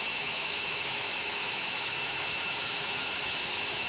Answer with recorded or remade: remade